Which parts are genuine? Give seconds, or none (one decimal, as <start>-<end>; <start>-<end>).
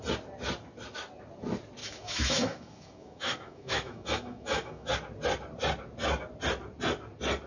0.0-1.8; 4.9-7.5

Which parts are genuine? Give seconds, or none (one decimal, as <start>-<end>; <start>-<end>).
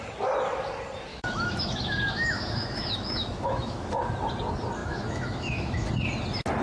0.0-1.1; 3.9-4.8; 5.9-6.6